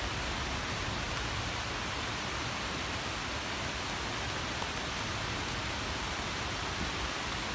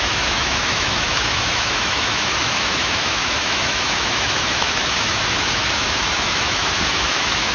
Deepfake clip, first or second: second